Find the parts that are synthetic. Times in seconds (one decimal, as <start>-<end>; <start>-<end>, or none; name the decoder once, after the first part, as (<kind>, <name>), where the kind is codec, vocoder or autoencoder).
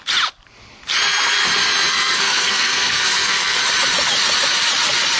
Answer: 1.9-3.6 (codec, SNAC)